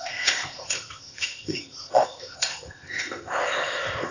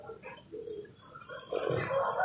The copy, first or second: first